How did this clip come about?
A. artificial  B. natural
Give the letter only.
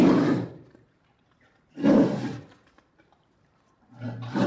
A